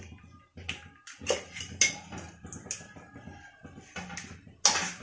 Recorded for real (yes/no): yes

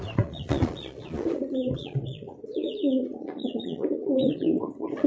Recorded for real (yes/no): no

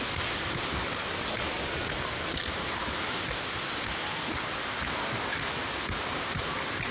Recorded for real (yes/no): yes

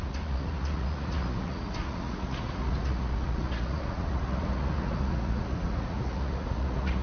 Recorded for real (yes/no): no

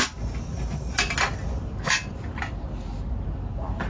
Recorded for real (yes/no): yes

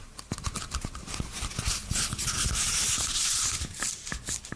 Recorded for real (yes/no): yes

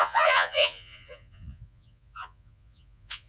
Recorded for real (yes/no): no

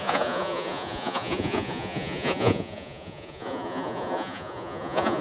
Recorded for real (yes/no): no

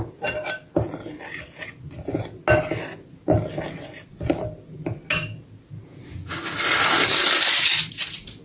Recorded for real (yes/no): yes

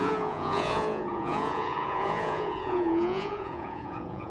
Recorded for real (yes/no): no